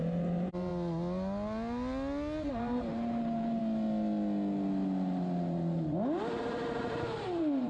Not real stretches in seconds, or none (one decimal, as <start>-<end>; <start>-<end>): 0.0-0.7; 2.6-3.6; 6.4-7.7